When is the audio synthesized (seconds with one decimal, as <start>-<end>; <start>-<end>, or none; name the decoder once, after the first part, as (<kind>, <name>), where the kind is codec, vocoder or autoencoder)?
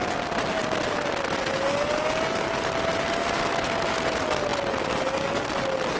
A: 0.6-1.1 (vocoder, BigVGAN v2)